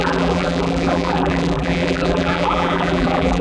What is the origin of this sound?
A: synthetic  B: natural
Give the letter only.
A